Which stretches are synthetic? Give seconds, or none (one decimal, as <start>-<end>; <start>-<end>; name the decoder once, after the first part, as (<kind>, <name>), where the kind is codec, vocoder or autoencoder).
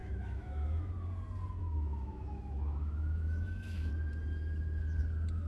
0.0-0.9 (autoencoder, DAC-VAE); 1.6-3.9